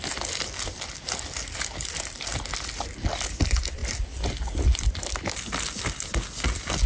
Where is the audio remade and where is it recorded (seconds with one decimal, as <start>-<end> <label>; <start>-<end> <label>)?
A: 0.0-6.9 recorded